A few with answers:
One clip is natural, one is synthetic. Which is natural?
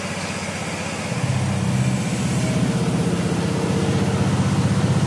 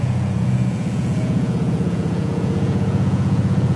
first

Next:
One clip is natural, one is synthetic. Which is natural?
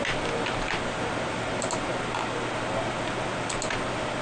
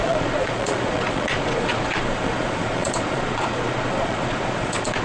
first